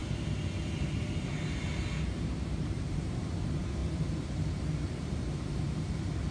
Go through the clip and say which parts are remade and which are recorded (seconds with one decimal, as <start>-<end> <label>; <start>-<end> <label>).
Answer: 0.0-2.1 recorded; 2.1-6.3 remade